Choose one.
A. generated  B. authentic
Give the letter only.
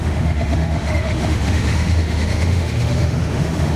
A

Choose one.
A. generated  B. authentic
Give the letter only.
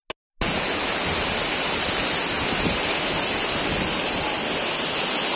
B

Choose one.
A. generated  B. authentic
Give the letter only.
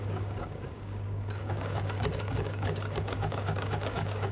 A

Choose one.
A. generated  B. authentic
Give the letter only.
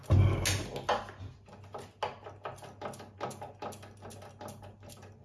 B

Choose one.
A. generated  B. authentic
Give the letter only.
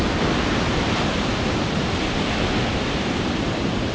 B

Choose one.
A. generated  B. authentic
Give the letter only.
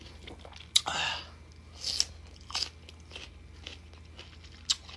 B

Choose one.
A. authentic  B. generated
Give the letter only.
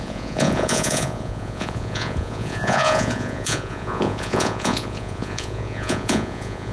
B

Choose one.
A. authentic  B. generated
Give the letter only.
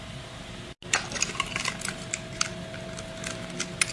A